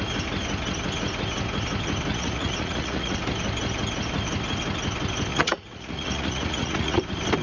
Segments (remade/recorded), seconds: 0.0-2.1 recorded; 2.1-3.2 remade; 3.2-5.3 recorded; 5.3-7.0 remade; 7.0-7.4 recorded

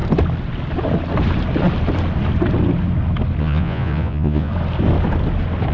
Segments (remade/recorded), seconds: 0.0-3.4 recorded; 3.4-4.5 remade; 4.5-5.7 recorded